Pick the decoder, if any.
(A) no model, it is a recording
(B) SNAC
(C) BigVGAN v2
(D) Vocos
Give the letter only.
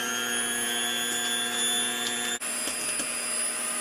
A